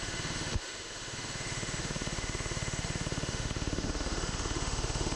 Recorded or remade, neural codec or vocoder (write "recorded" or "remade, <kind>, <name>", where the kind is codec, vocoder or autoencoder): remade, autoencoder, DAC-VAE